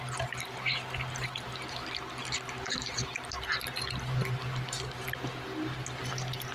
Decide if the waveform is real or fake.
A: real